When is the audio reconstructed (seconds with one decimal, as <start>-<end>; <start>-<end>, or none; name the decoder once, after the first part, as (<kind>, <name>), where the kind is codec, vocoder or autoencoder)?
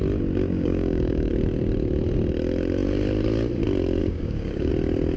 0.5-1.3 (codec, DAC); 4.0-4.7